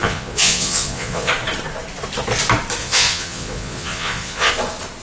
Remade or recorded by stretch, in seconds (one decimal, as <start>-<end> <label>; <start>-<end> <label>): 0.0-1.3 remade; 1.3-2.8 recorded; 2.8-4.5 remade; 4.5-5.0 recorded